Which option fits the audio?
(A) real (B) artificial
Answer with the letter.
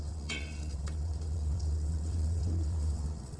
B